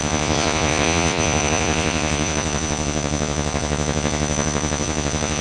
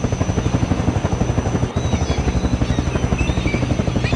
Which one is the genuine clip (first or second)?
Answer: second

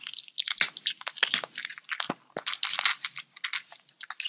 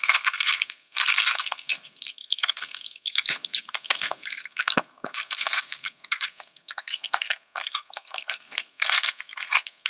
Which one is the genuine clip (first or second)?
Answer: first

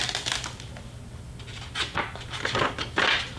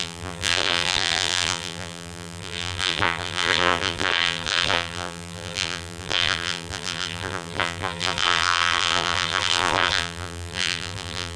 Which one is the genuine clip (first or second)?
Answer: first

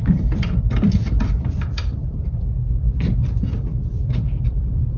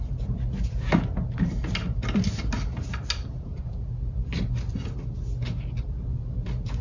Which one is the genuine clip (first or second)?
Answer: second